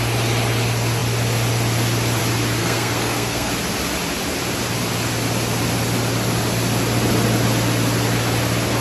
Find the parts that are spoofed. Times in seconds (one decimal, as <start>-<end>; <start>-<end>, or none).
2.6-3.5